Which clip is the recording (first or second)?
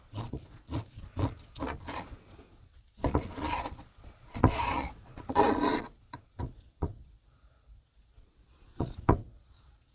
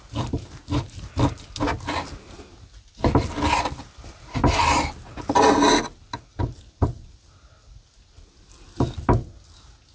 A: second